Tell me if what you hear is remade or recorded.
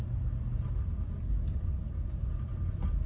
recorded